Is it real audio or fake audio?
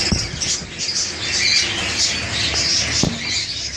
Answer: real